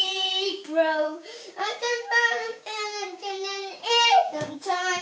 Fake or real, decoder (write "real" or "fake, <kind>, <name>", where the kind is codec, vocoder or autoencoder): fake, codec, DAC